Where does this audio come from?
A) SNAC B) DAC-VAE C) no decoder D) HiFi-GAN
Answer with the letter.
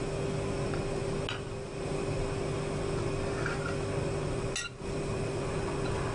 C